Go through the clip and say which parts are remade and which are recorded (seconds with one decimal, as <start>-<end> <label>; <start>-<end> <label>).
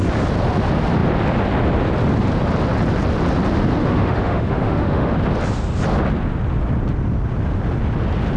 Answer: 0.0-3.8 recorded; 3.8-5.1 remade; 5.1-8.4 recorded